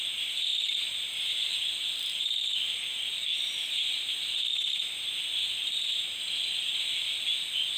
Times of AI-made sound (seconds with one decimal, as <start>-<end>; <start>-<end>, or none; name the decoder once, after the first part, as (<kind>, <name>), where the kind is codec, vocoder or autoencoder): 0.0-6.9 (vocoder, BigVGAN v2)